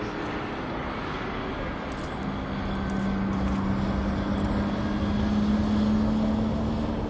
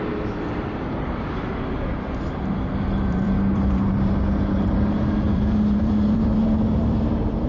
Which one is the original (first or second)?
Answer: first